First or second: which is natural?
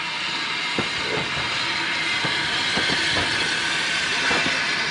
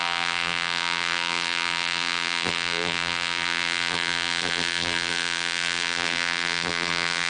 first